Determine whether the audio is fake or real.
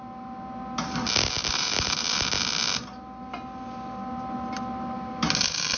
real